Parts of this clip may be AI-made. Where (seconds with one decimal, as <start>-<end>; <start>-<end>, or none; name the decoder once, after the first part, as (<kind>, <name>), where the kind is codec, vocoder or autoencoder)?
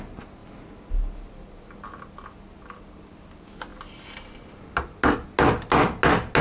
none